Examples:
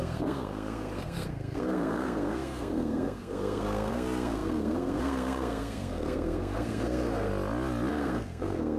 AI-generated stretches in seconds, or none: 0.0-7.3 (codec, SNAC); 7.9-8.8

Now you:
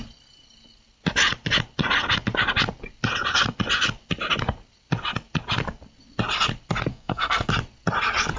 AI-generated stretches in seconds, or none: 6.9-7.5 (codec, SNAC)

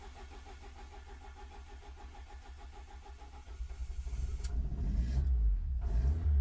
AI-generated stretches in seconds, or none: none

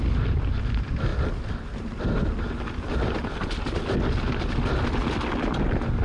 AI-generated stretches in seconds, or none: none

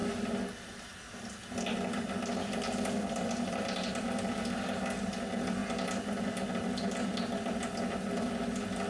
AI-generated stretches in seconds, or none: none

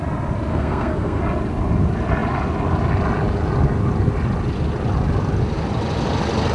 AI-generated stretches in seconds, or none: 0.5-1.2 (codec, SNAC)

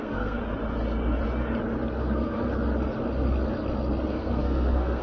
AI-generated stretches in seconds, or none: 0.0-0.4 (codec, SNAC); 2.0-2.4; 4.1-5.0

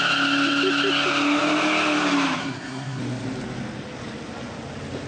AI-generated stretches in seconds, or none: 2.4-3.0 (codec, SNAC)